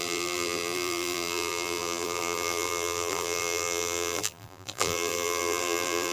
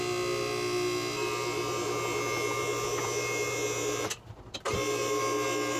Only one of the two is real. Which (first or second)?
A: second